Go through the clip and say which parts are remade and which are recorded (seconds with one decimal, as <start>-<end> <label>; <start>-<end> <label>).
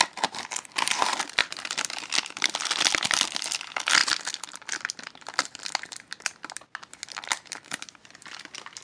0.0-8.8 recorded